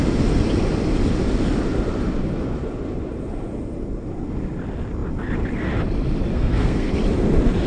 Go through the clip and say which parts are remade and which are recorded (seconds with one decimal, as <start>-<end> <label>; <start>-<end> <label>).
0.0-6.3 recorded; 6.3-6.9 remade; 6.9-7.7 recorded